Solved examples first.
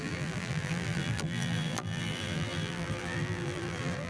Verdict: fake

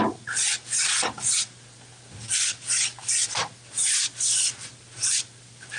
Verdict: real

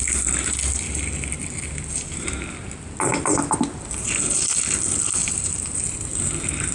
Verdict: fake